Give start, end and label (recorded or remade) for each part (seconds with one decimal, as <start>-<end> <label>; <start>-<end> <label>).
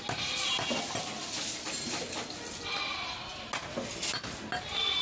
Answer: 0.0-5.0 recorded